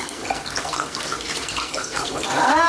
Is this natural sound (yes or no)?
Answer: no